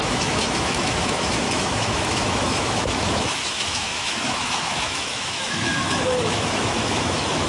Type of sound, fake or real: fake